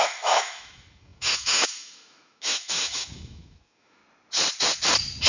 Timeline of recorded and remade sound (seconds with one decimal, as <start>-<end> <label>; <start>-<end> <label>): 0.0-4.0 remade; 4.0-5.3 recorded